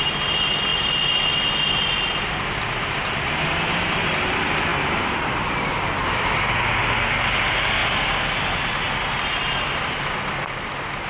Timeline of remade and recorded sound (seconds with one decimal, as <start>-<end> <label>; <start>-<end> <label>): 0.0-11.1 recorded